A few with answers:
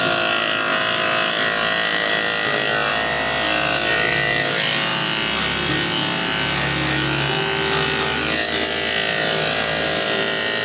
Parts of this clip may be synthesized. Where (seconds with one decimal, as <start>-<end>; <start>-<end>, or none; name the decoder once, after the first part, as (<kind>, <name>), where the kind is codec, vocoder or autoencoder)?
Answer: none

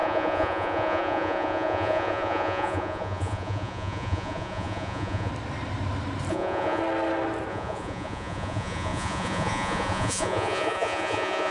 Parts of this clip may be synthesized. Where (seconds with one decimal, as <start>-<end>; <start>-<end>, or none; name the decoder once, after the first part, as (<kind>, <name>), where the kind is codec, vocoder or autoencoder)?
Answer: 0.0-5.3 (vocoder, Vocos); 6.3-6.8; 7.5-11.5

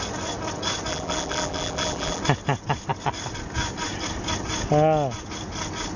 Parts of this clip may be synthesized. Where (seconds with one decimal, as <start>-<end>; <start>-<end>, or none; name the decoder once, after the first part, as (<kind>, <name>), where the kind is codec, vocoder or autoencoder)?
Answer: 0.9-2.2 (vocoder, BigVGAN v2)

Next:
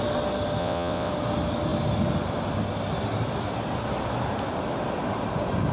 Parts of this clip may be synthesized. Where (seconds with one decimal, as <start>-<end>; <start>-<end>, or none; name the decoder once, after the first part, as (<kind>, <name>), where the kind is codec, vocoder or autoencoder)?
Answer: 0.6-1.1 (vocoder, WaveNeXt)